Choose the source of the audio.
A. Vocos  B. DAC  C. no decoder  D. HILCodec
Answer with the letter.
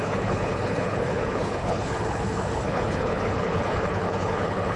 D